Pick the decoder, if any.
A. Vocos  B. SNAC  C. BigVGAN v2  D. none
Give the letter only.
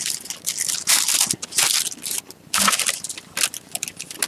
D